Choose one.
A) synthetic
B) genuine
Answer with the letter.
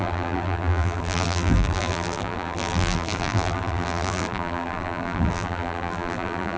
A